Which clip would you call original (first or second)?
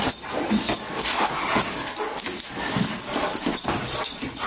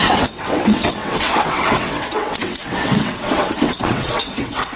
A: first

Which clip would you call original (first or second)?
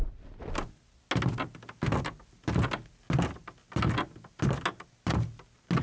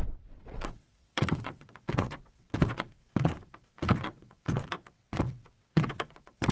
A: first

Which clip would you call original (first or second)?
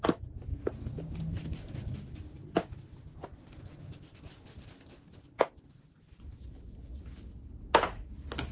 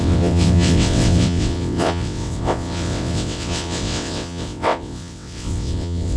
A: first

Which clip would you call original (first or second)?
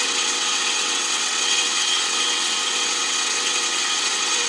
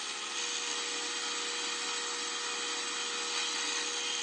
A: second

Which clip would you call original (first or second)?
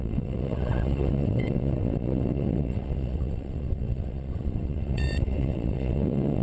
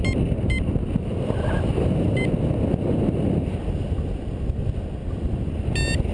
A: second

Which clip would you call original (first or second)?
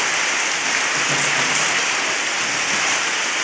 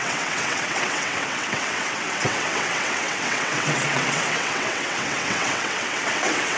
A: first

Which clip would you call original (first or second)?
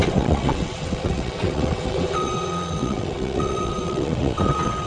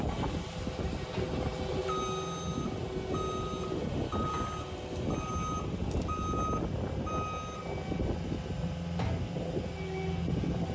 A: second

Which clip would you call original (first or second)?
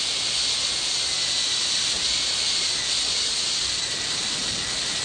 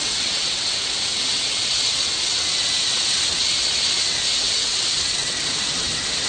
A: first